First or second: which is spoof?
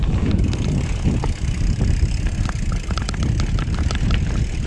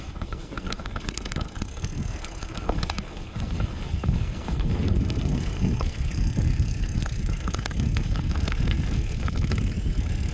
second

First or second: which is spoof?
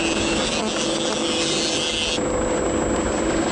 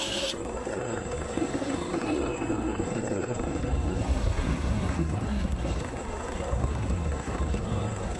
second